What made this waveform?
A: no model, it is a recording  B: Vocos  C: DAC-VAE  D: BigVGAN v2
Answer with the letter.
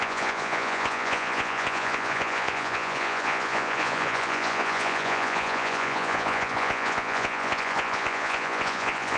B